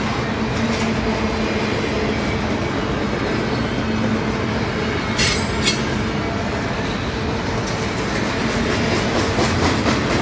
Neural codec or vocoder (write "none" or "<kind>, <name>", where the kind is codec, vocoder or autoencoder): none